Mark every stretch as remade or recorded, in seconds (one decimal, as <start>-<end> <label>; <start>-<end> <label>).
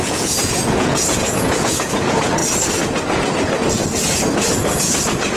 0.0-2.4 remade; 2.4-5.4 recorded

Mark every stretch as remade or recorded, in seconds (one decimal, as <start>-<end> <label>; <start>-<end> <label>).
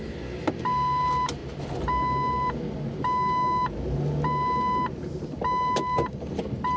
0.0-6.8 recorded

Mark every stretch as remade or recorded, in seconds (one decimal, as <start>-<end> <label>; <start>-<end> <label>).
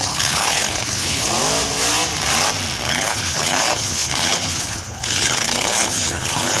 0.0-1.3 remade; 1.3-2.9 recorded; 2.9-6.6 remade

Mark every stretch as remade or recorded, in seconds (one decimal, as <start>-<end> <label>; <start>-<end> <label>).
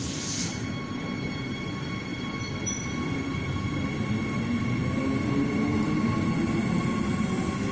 0.0-7.7 recorded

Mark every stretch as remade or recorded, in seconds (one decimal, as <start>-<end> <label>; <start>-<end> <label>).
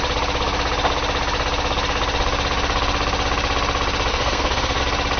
0.0-4.1 recorded; 4.1-4.8 remade; 4.8-5.2 recorded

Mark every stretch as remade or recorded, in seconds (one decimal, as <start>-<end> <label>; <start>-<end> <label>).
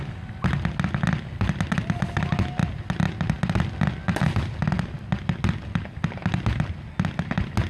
0.0-7.7 recorded